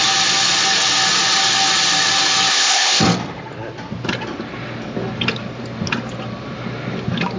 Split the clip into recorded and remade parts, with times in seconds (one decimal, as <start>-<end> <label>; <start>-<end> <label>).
0.0-2.5 recorded; 2.5-3.0 remade; 3.0-7.4 recorded

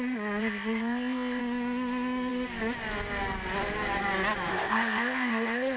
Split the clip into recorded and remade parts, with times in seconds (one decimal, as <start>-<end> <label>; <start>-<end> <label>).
0.0-0.4 recorded; 0.4-1.4 remade; 1.4-4.5 recorded; 4.5-5.8 remade

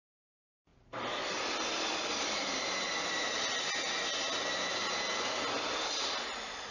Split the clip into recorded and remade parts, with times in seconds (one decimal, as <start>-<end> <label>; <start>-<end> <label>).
0.0-6.7 recorded

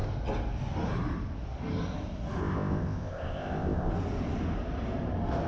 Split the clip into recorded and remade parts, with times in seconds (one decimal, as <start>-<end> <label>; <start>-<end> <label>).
0.0-2.4 recorded; 2.4-3.9 remade; 3.9-5.5 recorded

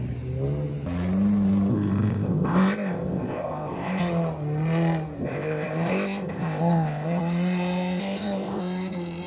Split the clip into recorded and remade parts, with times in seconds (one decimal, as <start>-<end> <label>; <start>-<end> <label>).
0.0-1.7 recorded; 1.7-4.0 remade; 4.0-5.2 recorded; 5.2-7.2 remade; 7.2-8.0 recorded; 8.0-8.6 remade; 8.6-9.3 recorded

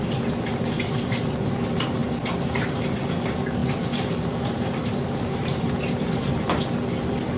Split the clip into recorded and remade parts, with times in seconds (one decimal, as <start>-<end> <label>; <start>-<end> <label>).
0.0-7.4 recorded